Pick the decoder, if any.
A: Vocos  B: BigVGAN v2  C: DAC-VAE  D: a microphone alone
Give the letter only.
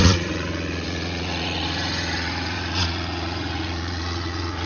A